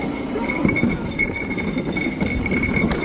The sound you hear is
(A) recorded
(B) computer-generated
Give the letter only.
A